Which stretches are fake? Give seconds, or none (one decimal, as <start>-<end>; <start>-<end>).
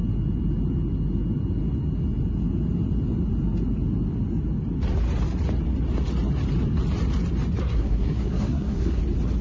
7.6-9.0